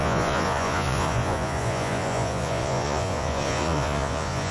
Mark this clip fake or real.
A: fake